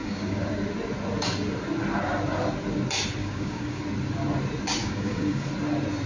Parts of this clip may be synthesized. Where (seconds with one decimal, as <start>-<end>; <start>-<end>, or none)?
0.0-0.5; 3.2-3.8; 4.8-5.5